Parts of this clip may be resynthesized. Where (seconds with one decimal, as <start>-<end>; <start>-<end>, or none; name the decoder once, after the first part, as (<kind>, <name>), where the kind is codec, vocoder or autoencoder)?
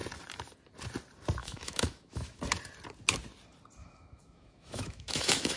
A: 1.4-2.4 (autoencoder, DAC-VAE); 3.8-5.6